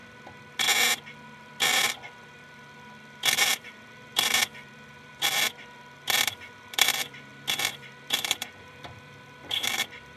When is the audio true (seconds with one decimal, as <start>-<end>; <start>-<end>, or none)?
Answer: 0.0-1.4